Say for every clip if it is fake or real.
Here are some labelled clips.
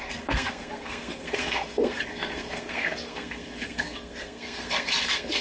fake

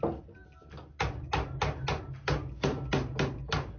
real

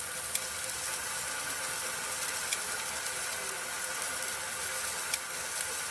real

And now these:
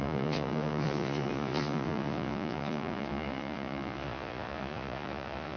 fake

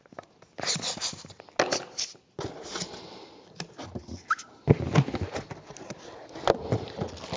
real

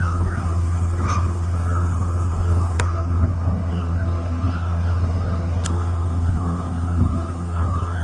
fake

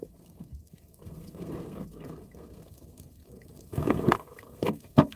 fake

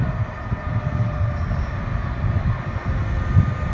real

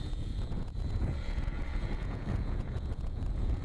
fake